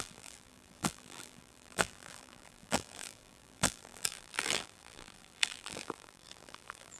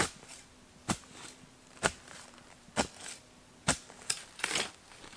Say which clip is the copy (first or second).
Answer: first